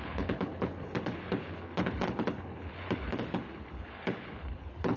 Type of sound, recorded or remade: remade